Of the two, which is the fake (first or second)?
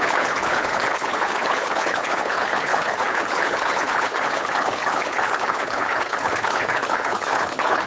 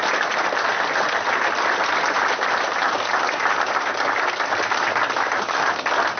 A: first